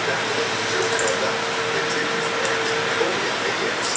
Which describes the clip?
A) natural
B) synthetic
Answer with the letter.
A